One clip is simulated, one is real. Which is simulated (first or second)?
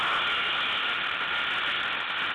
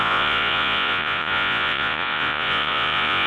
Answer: second